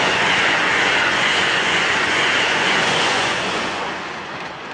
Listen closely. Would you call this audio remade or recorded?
remade